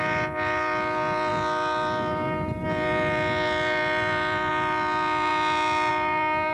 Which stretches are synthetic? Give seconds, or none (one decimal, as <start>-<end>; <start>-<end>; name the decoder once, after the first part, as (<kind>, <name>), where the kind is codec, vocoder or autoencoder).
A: none